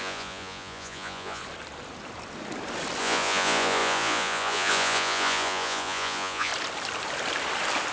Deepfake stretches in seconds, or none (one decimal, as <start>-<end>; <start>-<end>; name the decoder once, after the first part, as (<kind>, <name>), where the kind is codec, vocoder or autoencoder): 0.0-1.4 (vocoder, Vocos); 3.0-6.5